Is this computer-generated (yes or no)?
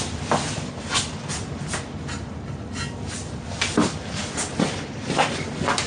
no